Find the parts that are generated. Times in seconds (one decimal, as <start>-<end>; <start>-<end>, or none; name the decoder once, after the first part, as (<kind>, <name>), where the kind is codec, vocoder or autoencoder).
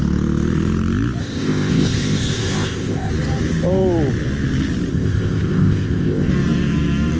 1.2-3.1 (codec, ZipCodec); 4.9-6.3